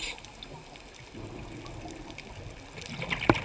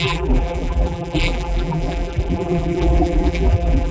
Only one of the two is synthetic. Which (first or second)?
second